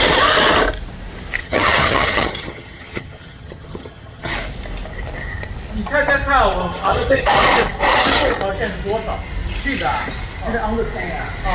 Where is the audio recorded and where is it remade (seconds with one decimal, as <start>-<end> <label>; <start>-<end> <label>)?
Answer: 0.0-1.4 recorded; 1.4-4.3 remade; 4.3-6.6 recorded; 6.6-7.2 remade; 7.2-11.5 recorded